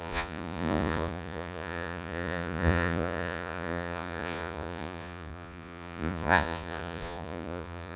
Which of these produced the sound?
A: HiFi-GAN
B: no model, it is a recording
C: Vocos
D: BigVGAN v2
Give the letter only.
C